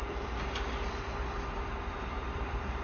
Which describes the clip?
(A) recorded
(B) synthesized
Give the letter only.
B